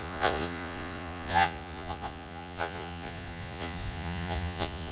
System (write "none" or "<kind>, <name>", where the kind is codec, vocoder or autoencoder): vocoder, Vocos